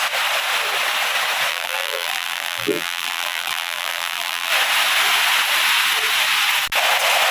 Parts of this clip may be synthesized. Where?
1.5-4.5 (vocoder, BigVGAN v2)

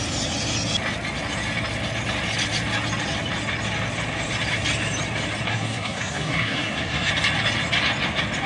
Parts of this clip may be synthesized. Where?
5.5-7.1 (codec, SNAC)